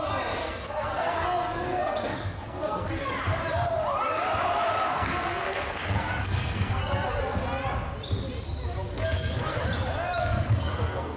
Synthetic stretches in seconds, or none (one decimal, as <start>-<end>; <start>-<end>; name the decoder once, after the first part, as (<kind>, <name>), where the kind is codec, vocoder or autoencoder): 0.4-2.9 (codec, SNAC); 4.8-7.2; 8.9-9.6; 10.2-11.2